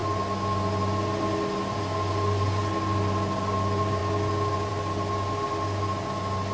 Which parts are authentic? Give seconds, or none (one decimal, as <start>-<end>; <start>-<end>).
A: 0.0-6.5